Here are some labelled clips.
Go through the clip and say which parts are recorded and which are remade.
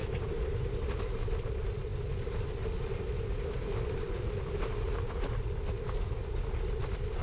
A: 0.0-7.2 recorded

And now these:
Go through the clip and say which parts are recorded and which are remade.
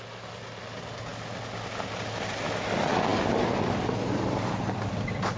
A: 0.0-5.4 recorded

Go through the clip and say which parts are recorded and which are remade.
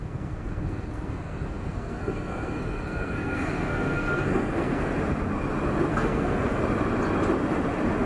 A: 0.0-4.9 remade; 4.9-5.9 recorded; 5.9-6.6 remade; 6.6-8.1 recorded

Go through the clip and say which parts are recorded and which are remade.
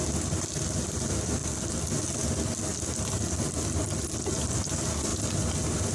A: 0.0-5.9 recorded